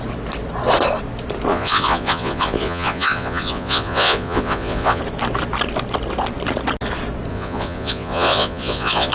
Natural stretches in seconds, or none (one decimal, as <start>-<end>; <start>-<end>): 0.0-1.5; 5.0-7.3